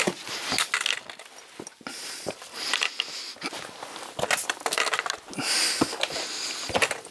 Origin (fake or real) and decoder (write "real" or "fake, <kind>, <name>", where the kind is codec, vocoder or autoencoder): real